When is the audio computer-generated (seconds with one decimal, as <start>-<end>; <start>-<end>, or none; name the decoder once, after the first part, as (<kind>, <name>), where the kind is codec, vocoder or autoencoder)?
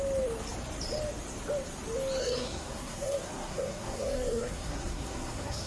2.2-5.7 (codec, SNAC)